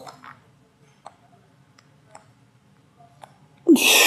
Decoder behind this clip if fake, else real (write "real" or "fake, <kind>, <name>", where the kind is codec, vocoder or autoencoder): real